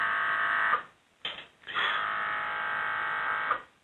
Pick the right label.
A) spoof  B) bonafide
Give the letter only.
B